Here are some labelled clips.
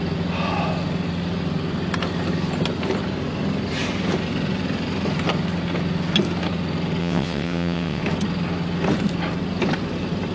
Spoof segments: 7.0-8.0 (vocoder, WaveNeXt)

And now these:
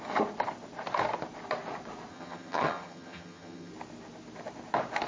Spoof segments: 2.1-3.7 (vocoder, HiFi-GAN)

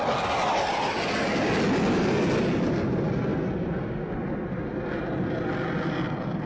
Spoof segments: none

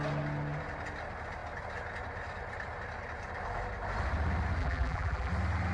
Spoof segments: 4.6-5.3 (vocoder, BigVGAN v2)